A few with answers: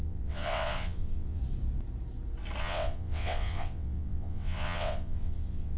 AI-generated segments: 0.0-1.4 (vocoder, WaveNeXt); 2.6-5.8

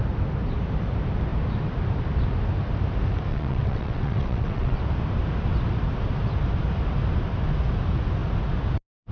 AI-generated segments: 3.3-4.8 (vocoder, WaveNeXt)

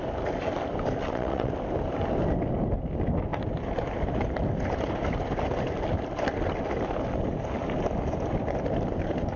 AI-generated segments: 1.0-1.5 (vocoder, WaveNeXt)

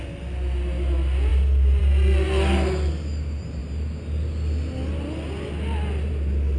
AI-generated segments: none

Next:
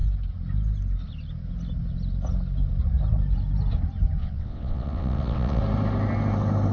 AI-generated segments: 4.2-5.6 (vocoder, WaveNeXt)